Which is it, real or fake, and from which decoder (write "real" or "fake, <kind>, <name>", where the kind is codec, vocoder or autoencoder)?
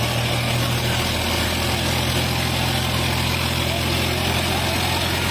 real